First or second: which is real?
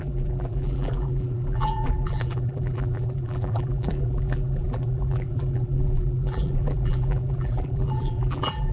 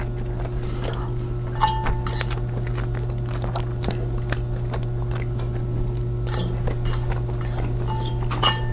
second